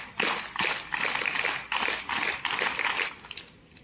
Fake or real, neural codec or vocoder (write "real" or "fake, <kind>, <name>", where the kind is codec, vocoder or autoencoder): real